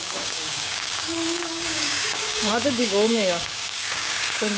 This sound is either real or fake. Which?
fake